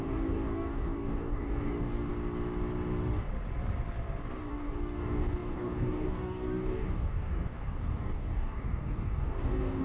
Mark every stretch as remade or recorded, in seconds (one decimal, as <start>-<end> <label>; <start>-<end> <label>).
0.0-2.1 remade; 2.1-4.5 recorded; 4.5-9.8 remade